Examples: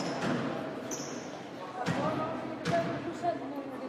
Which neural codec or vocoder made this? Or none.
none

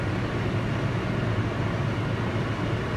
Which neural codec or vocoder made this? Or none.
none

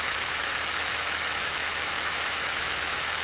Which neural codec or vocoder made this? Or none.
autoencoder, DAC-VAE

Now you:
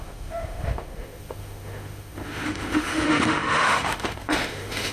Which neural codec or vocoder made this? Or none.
autoencoder, DAC-VAE